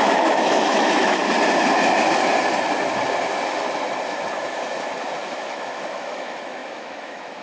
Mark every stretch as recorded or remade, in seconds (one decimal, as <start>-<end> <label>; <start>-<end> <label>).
0.0-1.2 remade; 1.2-5.2 recorded; 5.2-7.4 remade